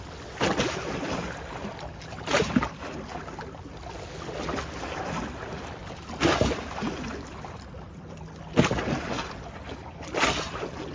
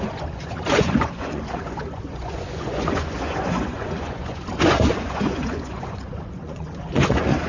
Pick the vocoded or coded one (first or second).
second